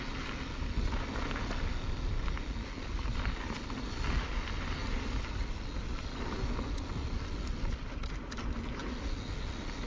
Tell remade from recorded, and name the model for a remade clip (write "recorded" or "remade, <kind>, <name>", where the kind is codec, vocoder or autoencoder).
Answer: recorded